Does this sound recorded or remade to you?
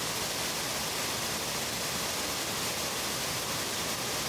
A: recorded